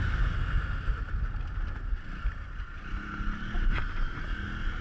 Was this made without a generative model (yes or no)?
yes